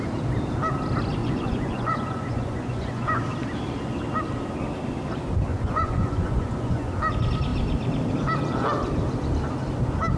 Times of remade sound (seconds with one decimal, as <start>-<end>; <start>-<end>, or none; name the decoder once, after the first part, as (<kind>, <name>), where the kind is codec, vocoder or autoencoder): 1.2-3.2 (vocoder, Vocos); 5.5-6.9